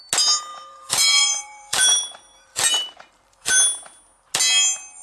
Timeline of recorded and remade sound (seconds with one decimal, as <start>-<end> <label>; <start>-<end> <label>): 0.0-0.5 recorded; 0.5-3.5 remade; 3.5-5.0 recorded